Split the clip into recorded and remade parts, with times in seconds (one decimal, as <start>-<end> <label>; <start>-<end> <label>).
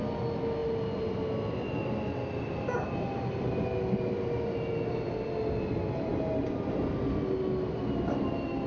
0.0-8.7 recorded